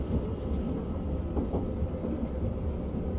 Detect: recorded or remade recorded